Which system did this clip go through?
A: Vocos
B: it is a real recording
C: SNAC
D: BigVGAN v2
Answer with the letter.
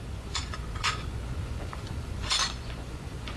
A